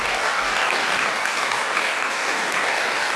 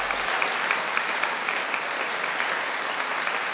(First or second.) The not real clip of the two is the first